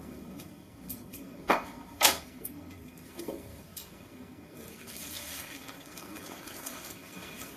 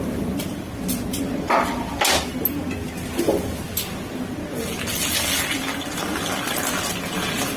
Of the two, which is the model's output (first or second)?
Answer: first